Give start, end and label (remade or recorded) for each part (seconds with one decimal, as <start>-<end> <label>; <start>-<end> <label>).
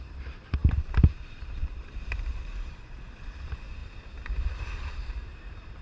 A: 0.0-5.8 remade